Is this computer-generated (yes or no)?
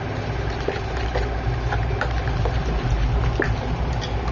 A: no